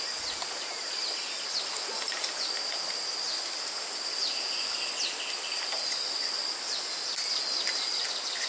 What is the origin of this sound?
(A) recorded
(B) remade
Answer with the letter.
A